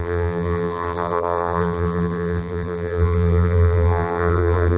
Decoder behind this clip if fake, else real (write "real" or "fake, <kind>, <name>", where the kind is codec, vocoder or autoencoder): fake, vocoder, BigVGAN v2